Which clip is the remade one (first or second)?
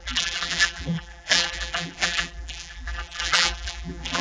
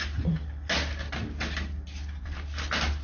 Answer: first